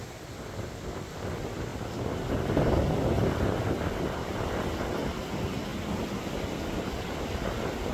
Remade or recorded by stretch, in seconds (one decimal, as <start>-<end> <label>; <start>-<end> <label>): 0.0-7.9 recorded